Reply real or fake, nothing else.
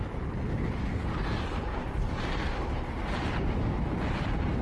real